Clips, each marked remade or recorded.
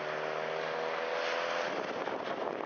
recorded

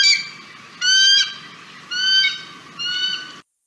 recorded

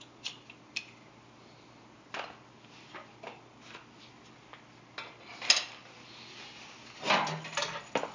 recorded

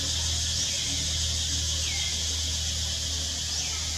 recorded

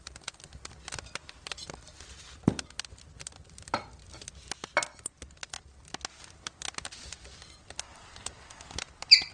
recorded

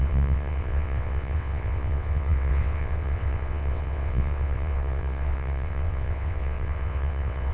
remade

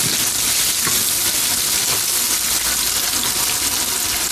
recorded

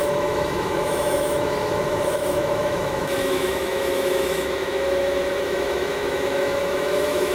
remade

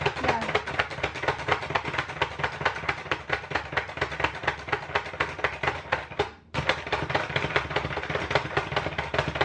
recorded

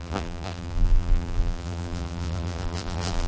remade